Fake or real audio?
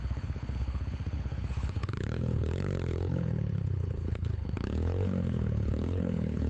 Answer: fake